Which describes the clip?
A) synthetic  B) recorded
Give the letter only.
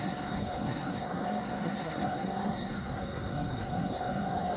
A